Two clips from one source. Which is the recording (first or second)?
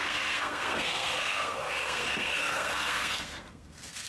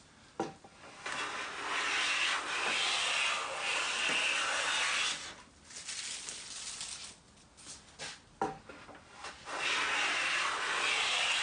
second